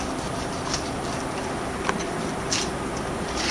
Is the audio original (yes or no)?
yes